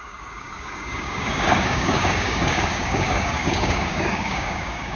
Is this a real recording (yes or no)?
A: no